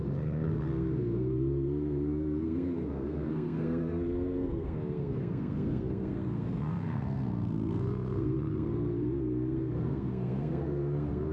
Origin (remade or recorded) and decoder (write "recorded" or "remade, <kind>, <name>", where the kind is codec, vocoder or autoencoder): remade, codec, SNAC